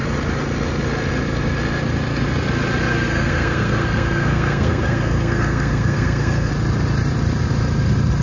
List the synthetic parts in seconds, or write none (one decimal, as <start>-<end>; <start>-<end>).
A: 2.9-6.5